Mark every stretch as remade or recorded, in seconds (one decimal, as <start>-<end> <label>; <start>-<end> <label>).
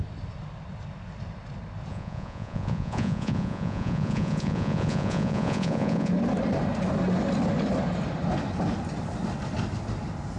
0.0-1.9 recorded; 1.9-6.1 remade; 6.1-10.4 recorded